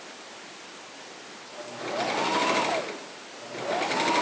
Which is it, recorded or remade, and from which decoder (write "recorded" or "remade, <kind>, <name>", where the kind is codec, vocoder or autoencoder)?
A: recorded